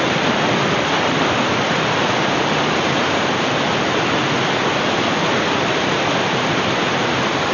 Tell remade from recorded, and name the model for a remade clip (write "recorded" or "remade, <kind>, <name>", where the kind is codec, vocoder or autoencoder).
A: remade, vocoder, BigVGAN v2